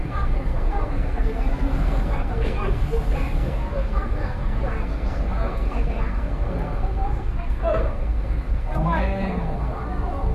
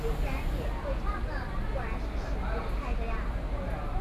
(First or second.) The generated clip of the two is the first